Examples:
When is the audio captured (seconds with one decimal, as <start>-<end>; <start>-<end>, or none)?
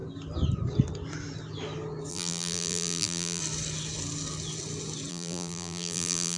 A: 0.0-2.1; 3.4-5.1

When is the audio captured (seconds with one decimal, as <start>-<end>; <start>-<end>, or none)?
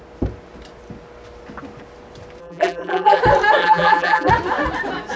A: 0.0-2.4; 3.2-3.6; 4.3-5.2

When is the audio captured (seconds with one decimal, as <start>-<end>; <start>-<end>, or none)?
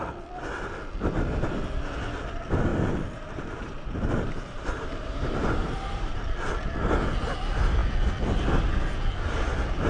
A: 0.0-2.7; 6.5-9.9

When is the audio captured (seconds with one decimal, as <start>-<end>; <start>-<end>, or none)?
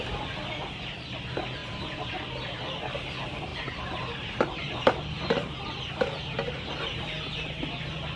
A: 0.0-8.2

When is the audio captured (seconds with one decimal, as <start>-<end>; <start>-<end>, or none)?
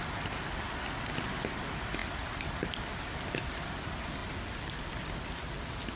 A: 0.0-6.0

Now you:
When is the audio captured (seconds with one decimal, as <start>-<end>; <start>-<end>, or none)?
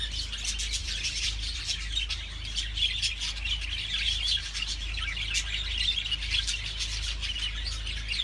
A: 0.0-0.8; 1.6-8.2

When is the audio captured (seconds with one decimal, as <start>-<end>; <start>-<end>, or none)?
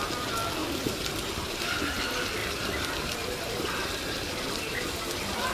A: 0.0-0.6; 2.0-2.4; 4.5-5.5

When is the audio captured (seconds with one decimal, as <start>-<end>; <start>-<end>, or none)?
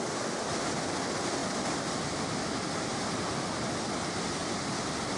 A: 0.0-5.2